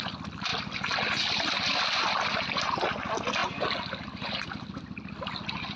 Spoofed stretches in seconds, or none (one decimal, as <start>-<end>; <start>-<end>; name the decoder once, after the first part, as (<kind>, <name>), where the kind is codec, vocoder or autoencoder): none